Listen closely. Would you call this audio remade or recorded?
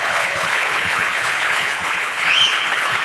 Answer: remade